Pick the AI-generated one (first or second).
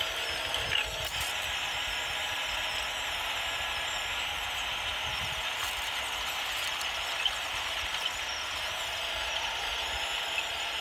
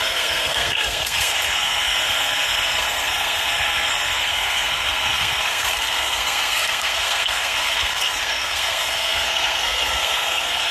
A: second